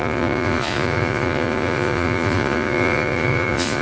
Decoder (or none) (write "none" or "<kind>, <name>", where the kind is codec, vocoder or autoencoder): vocoder, Vocos